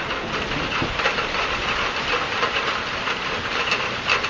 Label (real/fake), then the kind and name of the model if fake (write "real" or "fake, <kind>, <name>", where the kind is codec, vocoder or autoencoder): real